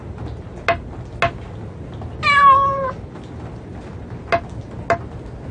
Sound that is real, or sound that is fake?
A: real